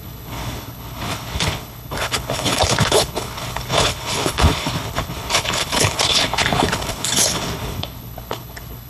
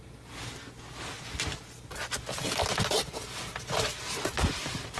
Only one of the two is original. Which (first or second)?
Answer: second